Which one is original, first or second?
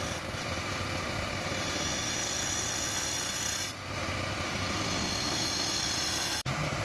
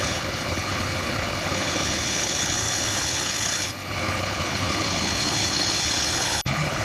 first